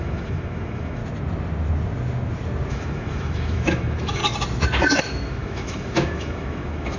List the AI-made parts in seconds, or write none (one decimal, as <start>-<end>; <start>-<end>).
0.0-1.0; 2.7-4.2; 5.0-7.0